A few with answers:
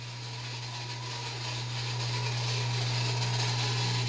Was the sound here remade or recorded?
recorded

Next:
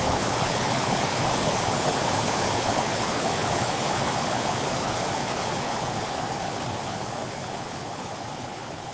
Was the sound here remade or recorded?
remade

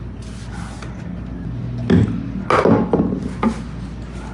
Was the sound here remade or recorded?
recorded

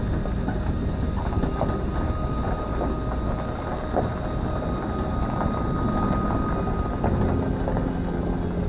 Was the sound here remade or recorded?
recorded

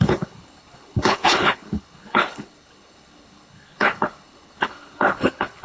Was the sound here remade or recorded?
remade